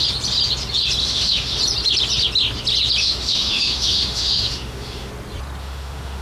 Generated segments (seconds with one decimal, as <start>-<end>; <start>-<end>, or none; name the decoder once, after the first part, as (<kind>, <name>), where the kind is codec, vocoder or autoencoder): 1.0-1.6 (autoencoder, DAC-VAE); 3.0-5.1; 5.6-6.2